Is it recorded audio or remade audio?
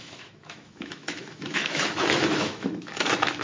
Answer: remade